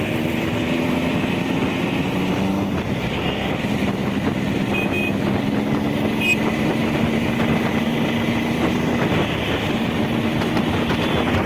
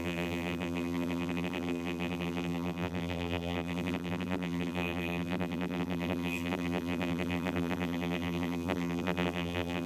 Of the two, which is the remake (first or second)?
second